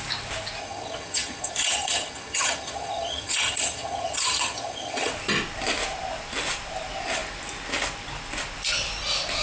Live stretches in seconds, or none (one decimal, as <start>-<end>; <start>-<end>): 0.0-0.6; 5.1-9.4